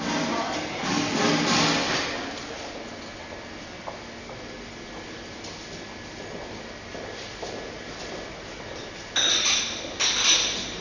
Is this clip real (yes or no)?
yes